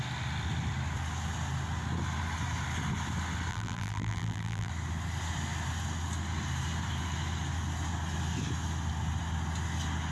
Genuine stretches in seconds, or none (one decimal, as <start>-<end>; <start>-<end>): 0.0-3.5; 4.7-10.1